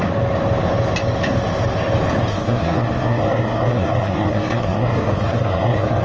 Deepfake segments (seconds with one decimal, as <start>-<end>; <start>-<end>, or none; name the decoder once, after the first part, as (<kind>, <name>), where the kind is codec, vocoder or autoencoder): 2.3-6.0 (codec, SNAC)